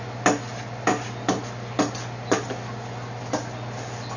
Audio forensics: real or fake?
real